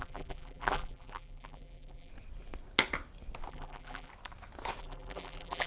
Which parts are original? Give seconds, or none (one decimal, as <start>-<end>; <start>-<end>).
2.1-3.5; 4.1-4.8